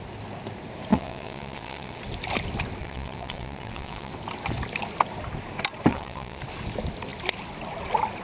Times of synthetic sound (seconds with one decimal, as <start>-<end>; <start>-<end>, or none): 0.9-2.0; 2.8-4.1; 5.9-6.4